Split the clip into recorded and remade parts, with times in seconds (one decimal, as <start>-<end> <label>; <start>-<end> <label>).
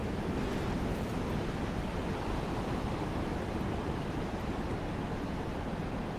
0.0-2.1 recorded; 2.1-4.3 remade; 4.3-5.4 recorded; 5.4-6.2 remade